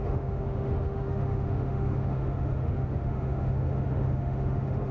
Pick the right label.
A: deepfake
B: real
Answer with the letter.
A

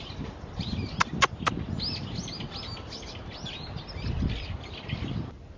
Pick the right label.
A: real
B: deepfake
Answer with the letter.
A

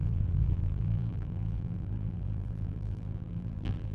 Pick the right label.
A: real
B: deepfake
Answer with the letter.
B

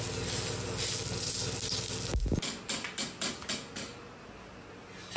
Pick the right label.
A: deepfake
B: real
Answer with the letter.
B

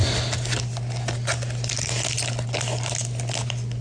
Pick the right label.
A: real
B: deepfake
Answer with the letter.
A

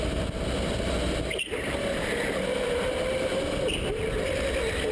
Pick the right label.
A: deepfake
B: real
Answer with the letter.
B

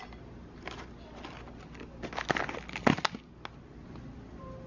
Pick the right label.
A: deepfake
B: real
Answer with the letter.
B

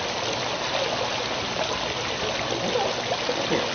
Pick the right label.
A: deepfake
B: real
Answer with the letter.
B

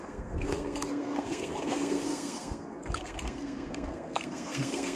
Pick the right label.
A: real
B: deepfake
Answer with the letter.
B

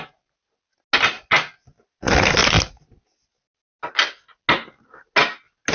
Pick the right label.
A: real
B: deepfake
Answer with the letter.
A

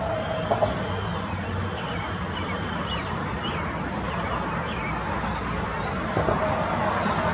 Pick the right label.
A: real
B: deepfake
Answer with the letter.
A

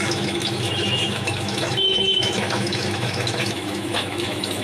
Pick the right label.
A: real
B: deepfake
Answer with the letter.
B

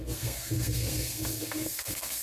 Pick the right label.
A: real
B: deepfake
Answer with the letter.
B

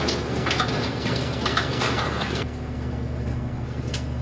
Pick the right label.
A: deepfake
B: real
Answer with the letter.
A